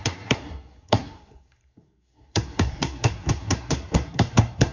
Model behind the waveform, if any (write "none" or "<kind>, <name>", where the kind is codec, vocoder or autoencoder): codec, SNAC